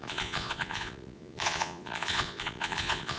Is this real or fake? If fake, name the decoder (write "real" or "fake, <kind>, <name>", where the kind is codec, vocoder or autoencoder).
fake, vocoder, Vocos